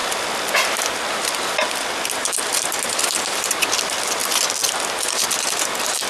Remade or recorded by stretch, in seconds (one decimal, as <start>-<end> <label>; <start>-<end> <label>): 0.0-6.1 recorded